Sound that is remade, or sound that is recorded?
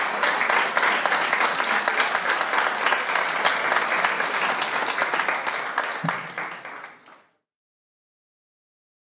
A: recorded